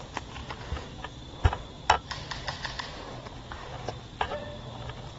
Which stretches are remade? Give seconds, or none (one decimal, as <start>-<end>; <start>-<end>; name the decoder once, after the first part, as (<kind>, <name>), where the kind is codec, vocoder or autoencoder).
3.9-4.4 (vocoder, BigVGAN v2)